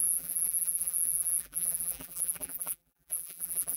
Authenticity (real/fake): fake